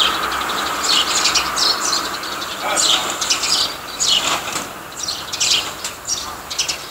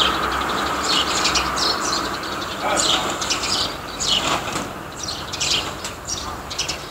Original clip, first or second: first